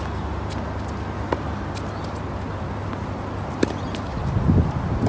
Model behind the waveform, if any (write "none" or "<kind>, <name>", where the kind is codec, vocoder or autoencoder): none